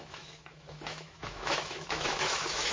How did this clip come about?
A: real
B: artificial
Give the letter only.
B